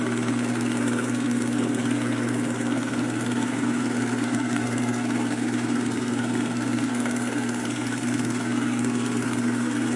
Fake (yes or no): yes